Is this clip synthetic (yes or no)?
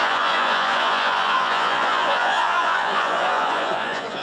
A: yes